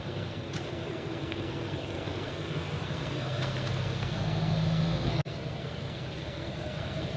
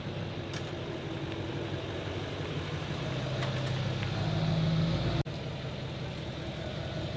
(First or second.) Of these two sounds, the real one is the second